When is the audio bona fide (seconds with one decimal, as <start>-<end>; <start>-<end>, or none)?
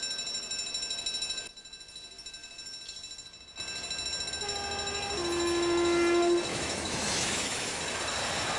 0.0-6.5; 7.8-8.6